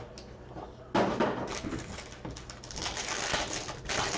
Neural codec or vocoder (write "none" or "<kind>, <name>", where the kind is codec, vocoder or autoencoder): none